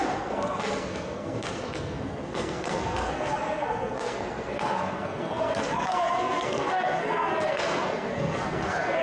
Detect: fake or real fake